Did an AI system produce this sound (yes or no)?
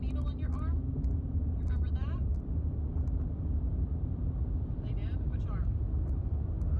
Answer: no